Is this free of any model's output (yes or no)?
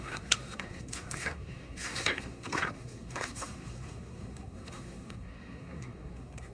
no